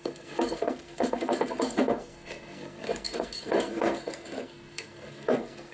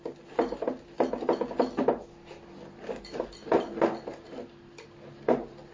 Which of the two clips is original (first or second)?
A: second